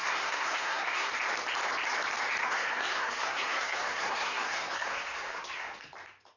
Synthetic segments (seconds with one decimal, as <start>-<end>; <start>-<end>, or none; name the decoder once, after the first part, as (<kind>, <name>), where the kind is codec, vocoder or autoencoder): 0.0-1.1 (codec, SNAC); 2.4-5.8